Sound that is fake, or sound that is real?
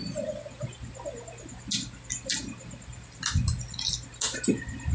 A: real